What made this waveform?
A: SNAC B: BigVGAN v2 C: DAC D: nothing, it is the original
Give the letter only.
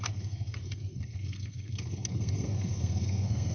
A